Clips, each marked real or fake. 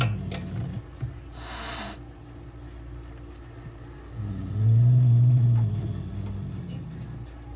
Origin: real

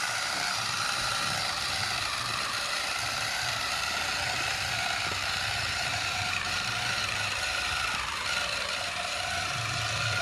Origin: fake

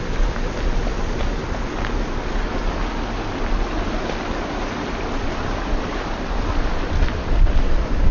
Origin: real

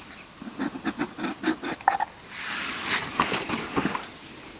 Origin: fake